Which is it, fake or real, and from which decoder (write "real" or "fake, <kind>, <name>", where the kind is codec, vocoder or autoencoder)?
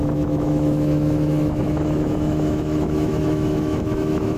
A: fake, autoencoder, DAC-VAE